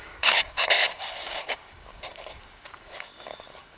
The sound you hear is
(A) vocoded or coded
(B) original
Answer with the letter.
A